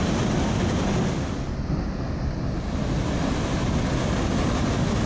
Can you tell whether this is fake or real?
real